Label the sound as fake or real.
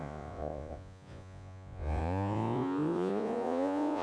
fake